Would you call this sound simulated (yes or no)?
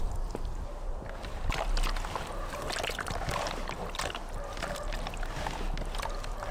no